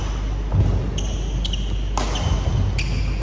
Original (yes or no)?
yes